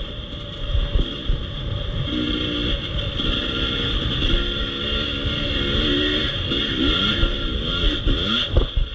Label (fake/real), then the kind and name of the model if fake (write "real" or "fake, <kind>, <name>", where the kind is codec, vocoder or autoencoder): real